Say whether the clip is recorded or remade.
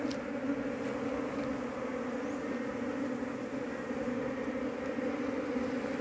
recorded